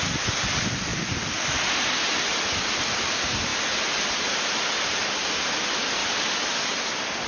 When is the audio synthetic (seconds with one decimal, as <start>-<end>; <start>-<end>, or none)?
none